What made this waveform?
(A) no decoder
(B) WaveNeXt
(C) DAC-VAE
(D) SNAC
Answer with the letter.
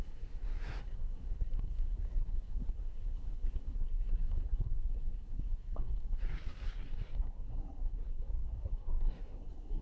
D